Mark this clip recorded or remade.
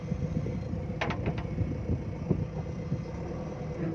recorded